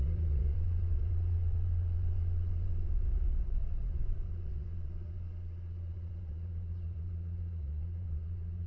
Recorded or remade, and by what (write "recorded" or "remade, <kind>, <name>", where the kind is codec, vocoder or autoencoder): remade, vocoder, Vocos